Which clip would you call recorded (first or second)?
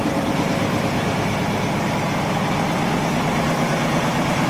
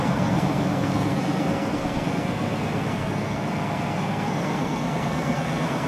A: first